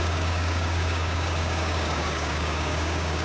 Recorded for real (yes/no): no